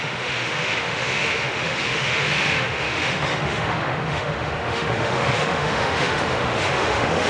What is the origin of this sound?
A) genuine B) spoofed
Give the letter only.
B